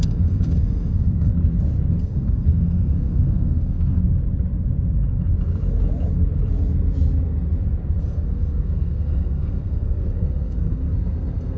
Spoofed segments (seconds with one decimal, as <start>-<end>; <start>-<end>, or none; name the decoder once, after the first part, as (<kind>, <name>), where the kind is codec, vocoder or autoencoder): 0.0-1.3 (codec, SNAC); 2.0-4.0; 8.0-11.6